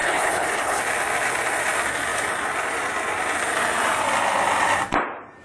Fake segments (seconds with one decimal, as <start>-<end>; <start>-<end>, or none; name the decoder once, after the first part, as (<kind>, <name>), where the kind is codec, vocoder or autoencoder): 0.0-0.8 (codec, HILCodec)